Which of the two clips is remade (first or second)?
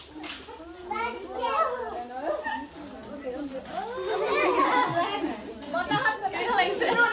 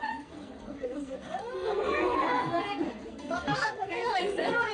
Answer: second